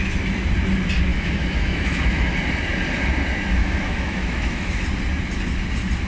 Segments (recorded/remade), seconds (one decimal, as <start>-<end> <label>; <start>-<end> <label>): 0.0-1.1 recorded; 1.1-2.3 remade; 2.3-3.6 recorded; 3.6-4.8 remade; 4.8-6.1 recorded